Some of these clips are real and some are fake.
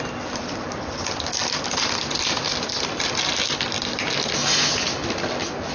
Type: real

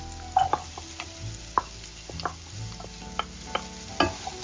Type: real